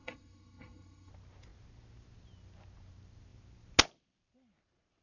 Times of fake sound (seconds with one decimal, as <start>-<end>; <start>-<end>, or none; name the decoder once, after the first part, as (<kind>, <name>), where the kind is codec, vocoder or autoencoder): 0.0-1.1 (codec, SNAC)